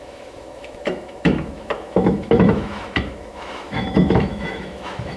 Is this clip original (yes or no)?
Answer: no